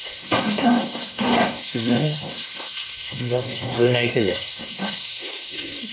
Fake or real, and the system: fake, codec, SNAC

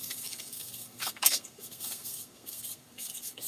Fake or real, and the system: fake, codec, SNAC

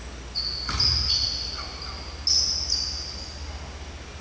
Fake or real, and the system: real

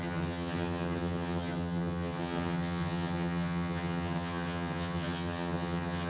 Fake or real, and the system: fake, vocoder, HiFi-GAN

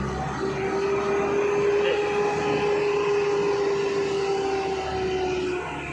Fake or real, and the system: real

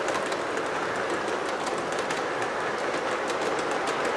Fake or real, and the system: real